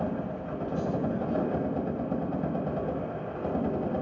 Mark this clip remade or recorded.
recorded